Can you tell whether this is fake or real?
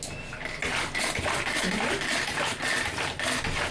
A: real